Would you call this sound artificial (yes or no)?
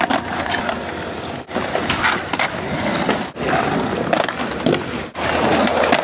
no